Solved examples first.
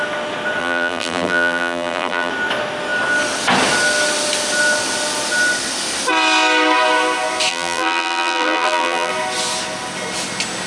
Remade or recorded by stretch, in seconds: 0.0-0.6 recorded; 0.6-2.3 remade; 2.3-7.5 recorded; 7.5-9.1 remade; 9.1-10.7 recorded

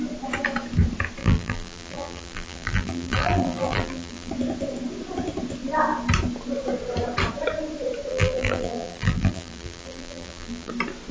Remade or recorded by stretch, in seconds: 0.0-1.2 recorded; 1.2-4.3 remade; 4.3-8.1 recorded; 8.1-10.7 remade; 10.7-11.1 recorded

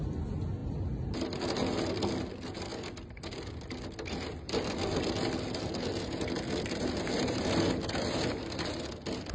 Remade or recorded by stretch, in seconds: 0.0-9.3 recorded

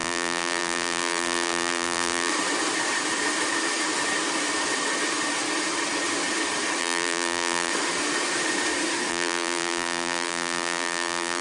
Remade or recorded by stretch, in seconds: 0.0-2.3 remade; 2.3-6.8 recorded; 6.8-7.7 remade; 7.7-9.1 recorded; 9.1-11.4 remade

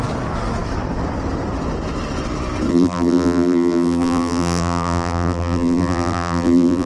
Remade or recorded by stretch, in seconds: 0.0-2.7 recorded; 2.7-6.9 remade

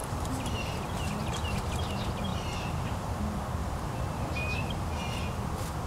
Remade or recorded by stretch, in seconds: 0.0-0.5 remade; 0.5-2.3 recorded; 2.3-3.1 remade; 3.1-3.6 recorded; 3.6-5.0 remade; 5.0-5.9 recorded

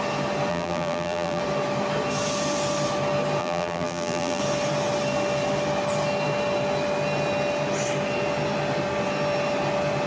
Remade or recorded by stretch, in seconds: 0.0-0.5 recorded; 0.5-1.4 remade; 1.4-3.4 recorded; 3.4-4.4 remade; 4.4-10.1 recorded

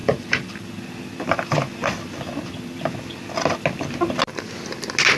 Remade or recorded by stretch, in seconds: 0.0-0.6 remade; 0.6-5.2 recorded